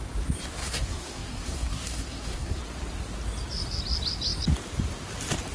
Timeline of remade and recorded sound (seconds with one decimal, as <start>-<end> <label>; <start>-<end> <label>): 0.0-0.6 recorded; 0.6-2.6 remade; 2.6-5.5 recorded